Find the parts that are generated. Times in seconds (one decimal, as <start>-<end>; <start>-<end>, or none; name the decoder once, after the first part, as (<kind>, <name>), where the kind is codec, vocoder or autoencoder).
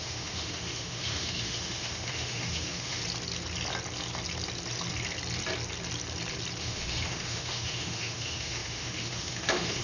0.0-3.0 (autoencoder, DAC-VAE); 6.6-9.8